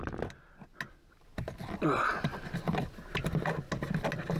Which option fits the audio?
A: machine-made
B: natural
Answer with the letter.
B